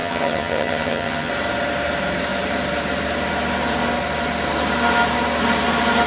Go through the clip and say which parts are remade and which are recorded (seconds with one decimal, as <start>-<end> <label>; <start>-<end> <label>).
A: 0.0-1.3 remade; 1.3-6.1 recorded